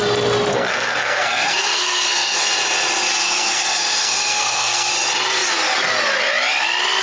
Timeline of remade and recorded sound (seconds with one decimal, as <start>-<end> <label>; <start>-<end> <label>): 0.0-0.5 recorded; 0.5-2.4 remade; 2.4-3.2 recorded; 3.2-4.9 remade; 4.9-7.0 recorded